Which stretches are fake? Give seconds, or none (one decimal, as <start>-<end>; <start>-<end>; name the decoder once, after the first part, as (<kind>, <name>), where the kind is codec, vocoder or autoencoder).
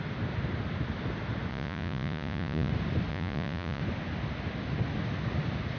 1.5-2.7 (vocoder, Vocos); 3.1-3.8